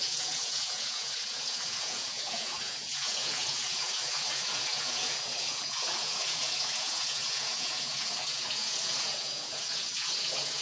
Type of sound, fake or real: fake